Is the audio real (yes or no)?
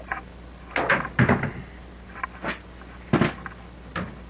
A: yes